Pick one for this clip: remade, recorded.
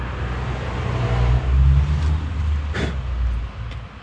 recorded